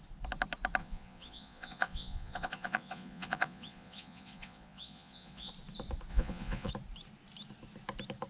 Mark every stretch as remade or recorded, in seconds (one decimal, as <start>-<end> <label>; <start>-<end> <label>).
0.0-0.8 recorded; 0.8-5.5 remade; 5.5-6.1 recorded; 6.1-6.7 remade; 6.7-8.3 recorded